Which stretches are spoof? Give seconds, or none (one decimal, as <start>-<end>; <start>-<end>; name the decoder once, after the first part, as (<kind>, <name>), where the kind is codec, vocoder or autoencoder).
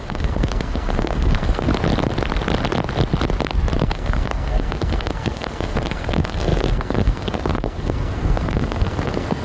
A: 0.0-1.7 (codec, SNAC); 3.8-9.4